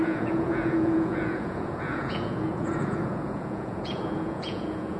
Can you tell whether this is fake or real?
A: fake